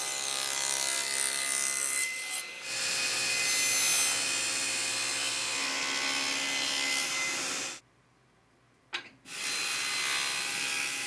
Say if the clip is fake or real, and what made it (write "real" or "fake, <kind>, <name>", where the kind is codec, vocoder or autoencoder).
real